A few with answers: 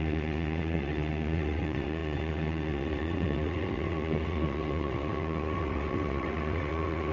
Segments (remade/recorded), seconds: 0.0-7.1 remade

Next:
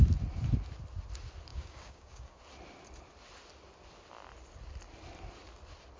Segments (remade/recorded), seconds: 0.0-1.5 recorded; 1.5-2.4 remade; 2.4-6.0 recorded

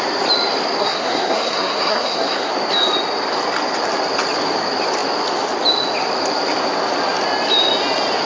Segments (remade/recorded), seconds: 0.0-0.8 recorded; 0.8-2.5 remade; 2.5-8.3 recorded

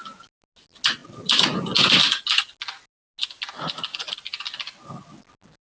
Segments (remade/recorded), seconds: 0.0-5.7 recorded